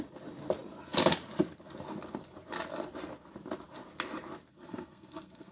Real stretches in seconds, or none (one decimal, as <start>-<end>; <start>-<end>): 0.0-4.5